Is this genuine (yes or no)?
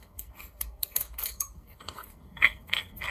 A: no